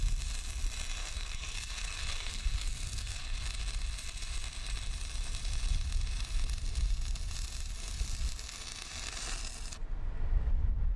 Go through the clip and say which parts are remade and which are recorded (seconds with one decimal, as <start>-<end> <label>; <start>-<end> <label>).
0.0-1.0 recorded; 1.0-3.2 remade; 3.2-11.0 recorded

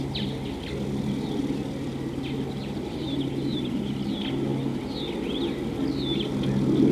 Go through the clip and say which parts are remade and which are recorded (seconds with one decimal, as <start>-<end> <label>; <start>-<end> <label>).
0.0-6.9 recorded

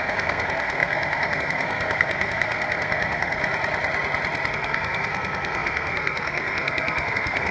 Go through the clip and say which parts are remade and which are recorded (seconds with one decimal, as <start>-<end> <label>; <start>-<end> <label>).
0.0-3.4 remade; 3.4-4.5 recorded; 4.5-7.5 remade

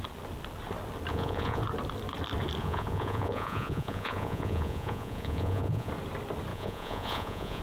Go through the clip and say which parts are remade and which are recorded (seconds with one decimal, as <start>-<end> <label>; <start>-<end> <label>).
0.0-1.1 recorded; 1.1-1.6 remade; 1.6-2.6 recorded; 2.6-5.9 remade; 5.9-6.5 recorded; 6.5-7.6 remade